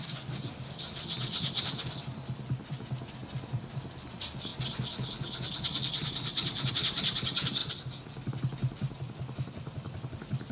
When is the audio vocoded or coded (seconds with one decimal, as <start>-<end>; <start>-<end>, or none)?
0.0-4.5; 6.7-7.6; 8.3-10.5